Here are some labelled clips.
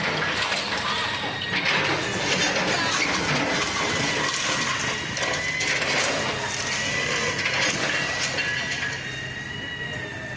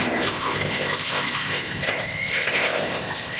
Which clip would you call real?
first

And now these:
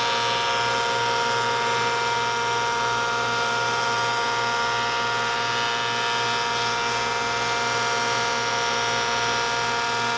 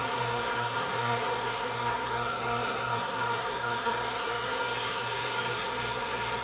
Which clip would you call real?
first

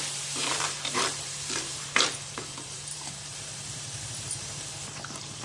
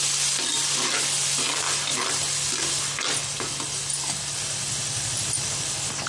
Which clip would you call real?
second